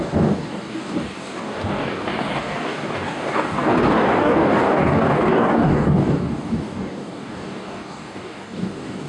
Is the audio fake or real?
fake